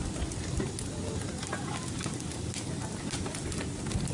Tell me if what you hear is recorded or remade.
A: recorded